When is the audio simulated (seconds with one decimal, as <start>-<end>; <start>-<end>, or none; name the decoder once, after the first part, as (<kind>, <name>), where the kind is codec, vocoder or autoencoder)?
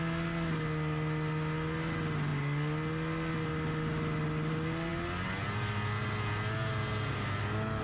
none